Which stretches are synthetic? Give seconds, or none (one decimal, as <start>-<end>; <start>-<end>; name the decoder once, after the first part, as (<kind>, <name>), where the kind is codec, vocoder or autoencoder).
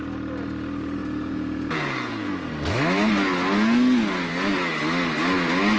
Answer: 1.0-2.3 (vocoder, Vocos)